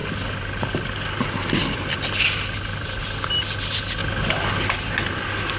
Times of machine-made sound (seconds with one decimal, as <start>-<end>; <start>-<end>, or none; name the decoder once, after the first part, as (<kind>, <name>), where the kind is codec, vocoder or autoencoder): 0.0-3.0 (vocoder, BigVGAN v2)